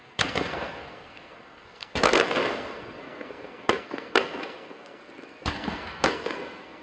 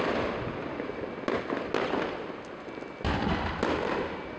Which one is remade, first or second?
first